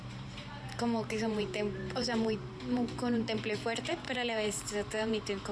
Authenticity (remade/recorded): remade